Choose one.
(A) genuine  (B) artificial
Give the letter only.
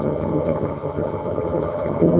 B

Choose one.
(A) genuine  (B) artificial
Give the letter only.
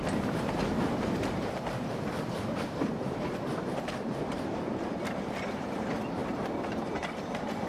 B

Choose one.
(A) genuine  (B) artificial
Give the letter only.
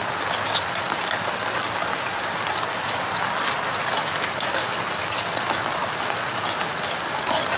A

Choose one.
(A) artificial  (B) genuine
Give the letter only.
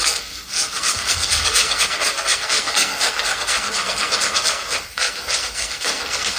A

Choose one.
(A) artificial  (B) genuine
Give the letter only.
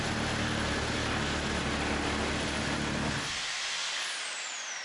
B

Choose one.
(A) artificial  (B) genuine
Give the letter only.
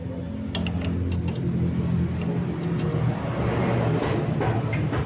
B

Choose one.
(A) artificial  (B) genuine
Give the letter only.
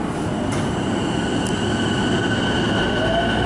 B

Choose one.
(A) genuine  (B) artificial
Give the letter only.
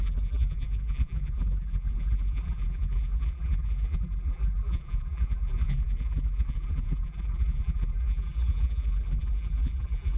B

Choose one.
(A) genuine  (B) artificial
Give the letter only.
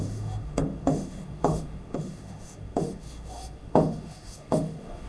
B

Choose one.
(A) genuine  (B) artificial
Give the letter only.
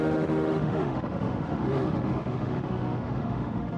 B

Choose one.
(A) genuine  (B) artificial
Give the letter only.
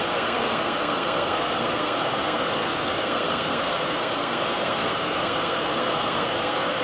B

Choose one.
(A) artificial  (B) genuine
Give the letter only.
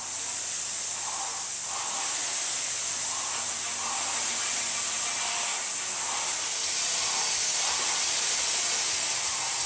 B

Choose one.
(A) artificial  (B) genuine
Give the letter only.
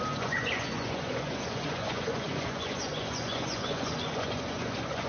A